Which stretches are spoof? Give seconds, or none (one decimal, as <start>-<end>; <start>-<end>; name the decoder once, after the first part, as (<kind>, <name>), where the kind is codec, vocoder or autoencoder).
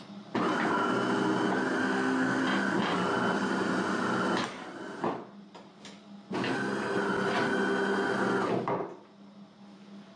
1.8-2.4 (codec, SNAC)